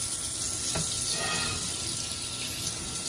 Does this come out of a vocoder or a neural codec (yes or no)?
no